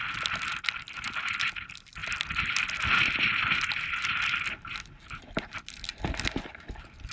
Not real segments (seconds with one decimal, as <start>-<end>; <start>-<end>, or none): none